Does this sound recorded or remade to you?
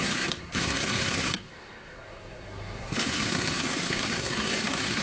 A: remade